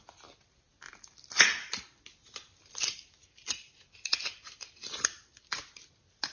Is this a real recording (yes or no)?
yes